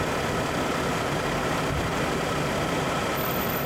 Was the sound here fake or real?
real